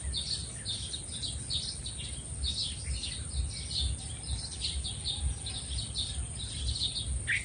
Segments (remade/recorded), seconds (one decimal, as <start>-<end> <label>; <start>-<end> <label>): 0.0-7.4 recorded